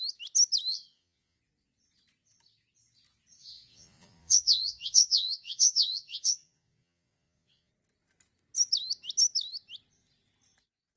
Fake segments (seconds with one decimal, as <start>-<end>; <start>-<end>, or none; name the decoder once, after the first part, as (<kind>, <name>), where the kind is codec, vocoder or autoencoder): 0.7-1.4 (vocoder, Vocos); 3.4-7.7